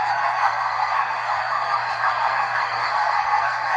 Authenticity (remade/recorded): remade